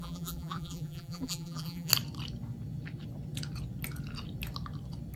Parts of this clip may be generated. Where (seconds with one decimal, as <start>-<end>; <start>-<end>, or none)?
0.0-1.9